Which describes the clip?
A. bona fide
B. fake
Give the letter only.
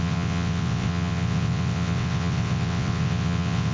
B